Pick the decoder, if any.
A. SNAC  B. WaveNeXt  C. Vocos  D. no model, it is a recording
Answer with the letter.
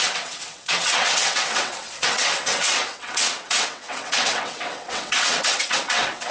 B